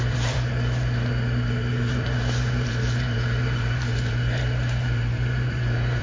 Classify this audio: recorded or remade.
remade